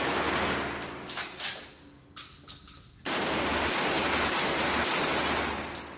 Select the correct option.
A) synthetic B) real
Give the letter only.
B